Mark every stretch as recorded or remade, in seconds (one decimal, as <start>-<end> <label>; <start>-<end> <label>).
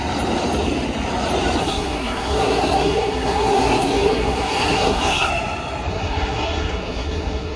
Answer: 0.0-1.6 recorded; 1.6-5.3 remade; 5.3-5.9 recorded; 5.9-7.6 remade